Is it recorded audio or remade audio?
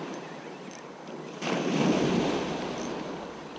recorded